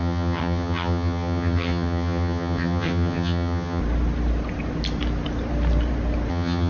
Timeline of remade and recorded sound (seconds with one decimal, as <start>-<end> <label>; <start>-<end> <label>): 0.0-3.8 remade; 3.8-6.3 recorded; 6.3-6.7 remade